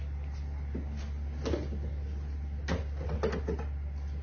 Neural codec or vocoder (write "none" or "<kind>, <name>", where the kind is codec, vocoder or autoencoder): none